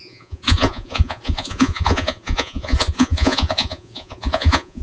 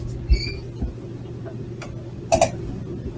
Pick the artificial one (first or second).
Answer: first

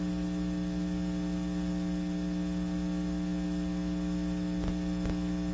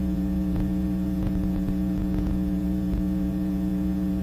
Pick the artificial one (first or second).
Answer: second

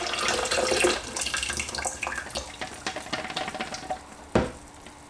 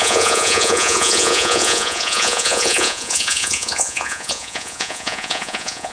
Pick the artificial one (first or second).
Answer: second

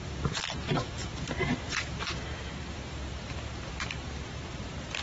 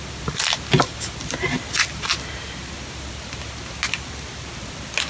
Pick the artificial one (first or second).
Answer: first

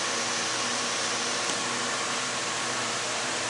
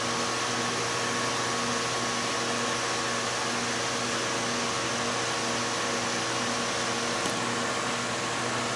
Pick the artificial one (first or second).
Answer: first